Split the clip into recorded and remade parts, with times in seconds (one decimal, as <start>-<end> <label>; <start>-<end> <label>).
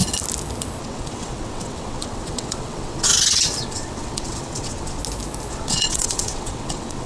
0.0-0.8 recorded; 0.8-3.1 remade; 3.1-3.6 recorded; 3.6-5.0 remade; 5.0-5.5 recorded; 5.5-7.1 remade